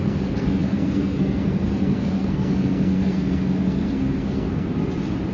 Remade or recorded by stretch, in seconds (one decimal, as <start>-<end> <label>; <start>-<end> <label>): 0.0-4.7 remade; 4.7-5.3 recorded